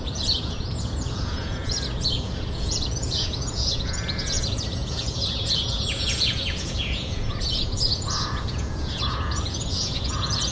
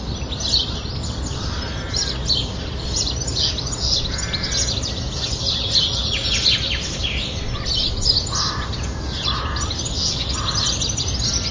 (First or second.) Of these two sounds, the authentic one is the second